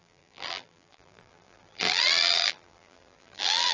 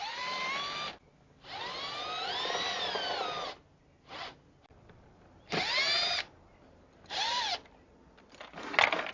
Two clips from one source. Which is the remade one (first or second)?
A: first